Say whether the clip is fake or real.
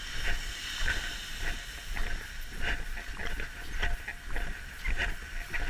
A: real